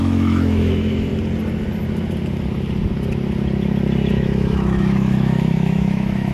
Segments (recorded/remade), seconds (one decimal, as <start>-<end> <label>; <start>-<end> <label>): 0.0-1.1 remade; 1.1-4.1 recorded; 4.1-6.3 remade